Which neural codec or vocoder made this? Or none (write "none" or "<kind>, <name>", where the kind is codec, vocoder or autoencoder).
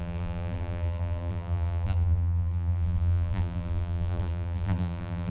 vocoder, BigVGAN v2